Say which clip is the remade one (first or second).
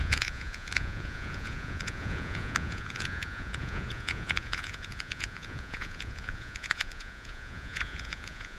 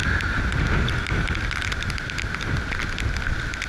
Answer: first